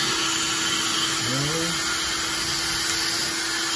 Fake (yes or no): no